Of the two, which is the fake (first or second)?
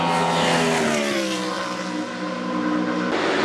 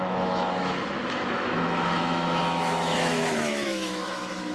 second